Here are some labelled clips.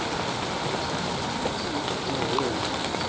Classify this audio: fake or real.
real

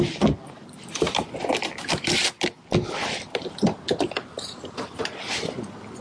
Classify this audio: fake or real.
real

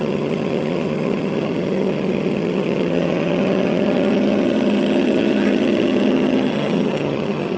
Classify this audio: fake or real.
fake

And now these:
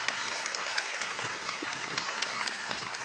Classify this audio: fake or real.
fake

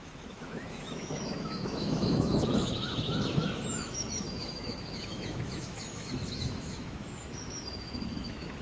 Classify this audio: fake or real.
fake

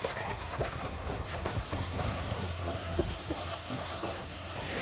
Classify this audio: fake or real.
fake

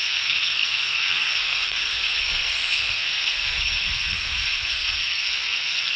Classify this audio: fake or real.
fake